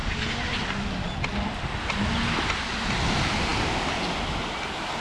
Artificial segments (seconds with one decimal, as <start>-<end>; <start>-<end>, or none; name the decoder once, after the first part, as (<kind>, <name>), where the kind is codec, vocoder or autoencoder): none